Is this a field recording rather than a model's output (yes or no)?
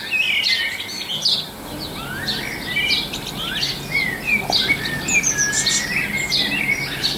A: yes